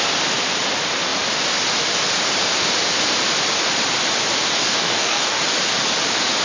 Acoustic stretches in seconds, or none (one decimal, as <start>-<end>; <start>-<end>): 0.0-4.6; 5.4-6.4